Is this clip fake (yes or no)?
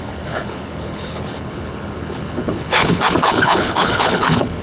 yes